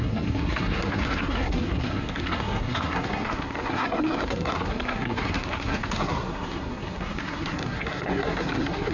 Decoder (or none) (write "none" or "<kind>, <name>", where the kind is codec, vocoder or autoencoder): codec, SNAC